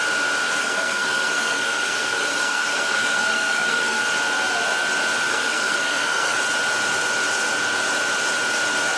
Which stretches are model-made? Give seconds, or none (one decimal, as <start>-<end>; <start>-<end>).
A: 0.6-4.0; 5.3-6.4

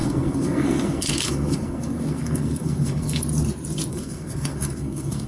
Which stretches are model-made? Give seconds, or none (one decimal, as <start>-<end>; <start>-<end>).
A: 0.0-3.2; 3.9-5.3

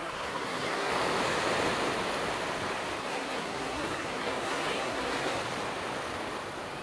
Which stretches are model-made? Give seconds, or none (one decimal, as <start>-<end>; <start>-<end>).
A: 0.0-0.9; 3.0-5.4

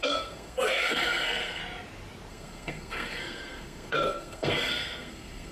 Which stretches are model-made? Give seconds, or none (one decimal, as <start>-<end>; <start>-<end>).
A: 0.0-1.6; 2.3-5.5

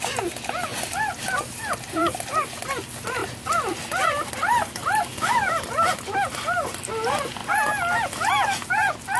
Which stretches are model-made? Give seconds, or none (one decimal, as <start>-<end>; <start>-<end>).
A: none